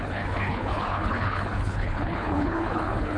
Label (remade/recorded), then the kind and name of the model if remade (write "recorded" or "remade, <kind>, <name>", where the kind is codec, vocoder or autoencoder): remade, codec, HILCodec